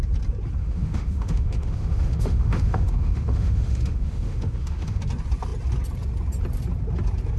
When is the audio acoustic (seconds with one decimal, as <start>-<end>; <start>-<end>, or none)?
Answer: 0.0-0.6; 5.0-7.4